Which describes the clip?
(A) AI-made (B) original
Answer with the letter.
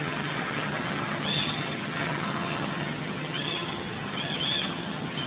A